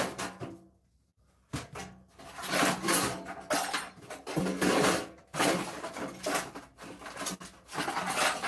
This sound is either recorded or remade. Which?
recorded